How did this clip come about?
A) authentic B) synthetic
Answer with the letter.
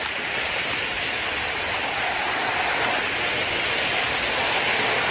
A